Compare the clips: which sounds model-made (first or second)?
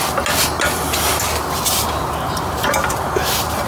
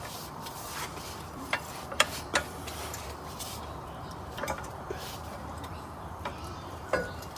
second